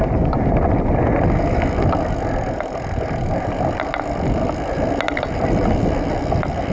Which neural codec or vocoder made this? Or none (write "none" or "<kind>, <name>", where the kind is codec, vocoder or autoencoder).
none